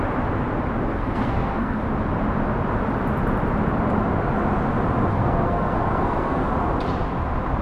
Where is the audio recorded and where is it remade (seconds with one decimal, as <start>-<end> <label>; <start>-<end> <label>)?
0.0-0.9 recorded; 0.9-1.8 remade; 1.8-5.1 recorded; 5.1-6.5 remade; 6.5-7.6 recorded